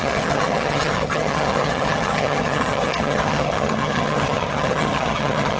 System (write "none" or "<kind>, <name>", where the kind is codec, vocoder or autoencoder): vocoder, HiFi-GAN